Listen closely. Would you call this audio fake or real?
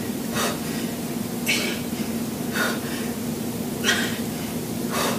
real